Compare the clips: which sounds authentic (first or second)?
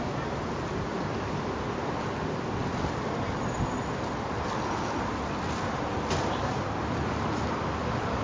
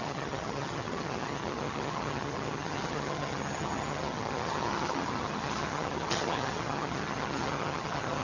first